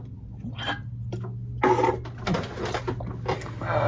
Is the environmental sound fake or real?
real